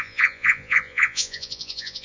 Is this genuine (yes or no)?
no